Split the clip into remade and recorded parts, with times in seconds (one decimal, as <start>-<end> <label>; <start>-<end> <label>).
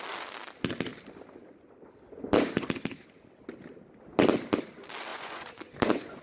0.0-5.1 recorded; 5.1-6.2 remade